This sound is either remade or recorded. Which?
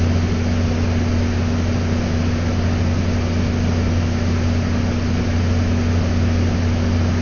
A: recorded